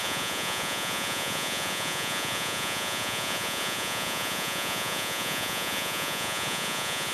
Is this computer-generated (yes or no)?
yes